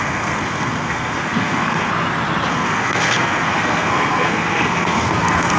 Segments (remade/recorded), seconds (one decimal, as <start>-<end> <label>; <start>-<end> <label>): 0.0-1.9 remade; 1.9-2.5 recorded; 2.5-5.6 remade